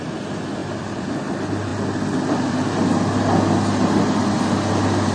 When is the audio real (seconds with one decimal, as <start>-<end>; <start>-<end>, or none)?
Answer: 0.0-0.6; 1.2-5.1